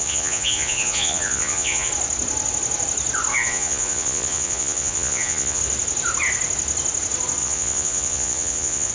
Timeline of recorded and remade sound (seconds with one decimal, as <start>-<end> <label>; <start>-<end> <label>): 0.0-1.9 remade; 1.9-3.3 recorded; 3.3-5.6 remade; 5.6-7.4 recorded; 7.4-8.9 remade

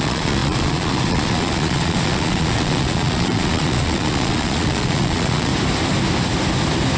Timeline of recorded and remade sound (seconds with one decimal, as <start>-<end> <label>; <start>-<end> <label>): 0.0-5.5 remade; 5.5-7.0 recorded

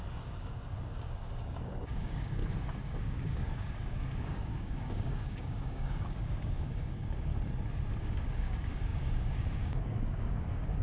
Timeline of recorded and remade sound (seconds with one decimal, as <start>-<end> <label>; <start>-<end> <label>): 0.0-2.4 remade; 2.4-3.0 recorded; 3.0-7.3 remade; 7.3-8.0 recorded; 8.0-10.8 remade

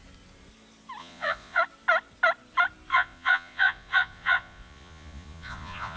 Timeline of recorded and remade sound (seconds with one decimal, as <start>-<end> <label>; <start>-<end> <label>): 0.0-1.0 recorded; 1.0-1.6 remade; 1.6-2.9 recorded; 2.9-6.0 remade

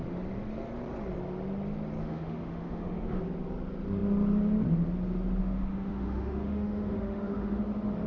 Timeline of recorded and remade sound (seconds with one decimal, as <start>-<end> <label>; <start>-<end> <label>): 0.0-2.0 recorded; 2.0-3.2 remade; 3.2-5.4 recorded; 5.4-7.6 remade; 7.6-8.1 recorded

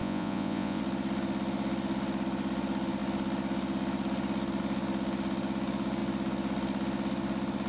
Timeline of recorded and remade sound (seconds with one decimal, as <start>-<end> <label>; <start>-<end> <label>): 0.0-0.8 remade; 0.8-7.7 recorded

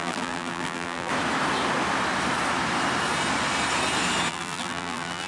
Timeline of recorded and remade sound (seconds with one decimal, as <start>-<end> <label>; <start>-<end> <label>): 0.0-1.1 remade; 1.1-4.3 recorded; 4.3-5.3 remade

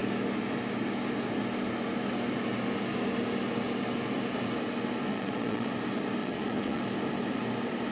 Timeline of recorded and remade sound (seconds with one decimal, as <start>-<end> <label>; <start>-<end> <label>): 0.0-5.1 recorded; 5.1-5.7 remade; 5.7-6.2 recorded; 6.2-6.8 remade; 6.8-7.9 recorded